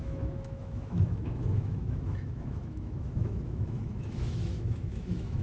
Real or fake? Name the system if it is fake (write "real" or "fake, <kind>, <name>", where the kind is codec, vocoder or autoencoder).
fake, autoencoder, DAC-VAE